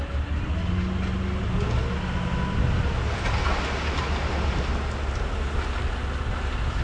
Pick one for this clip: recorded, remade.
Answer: recorded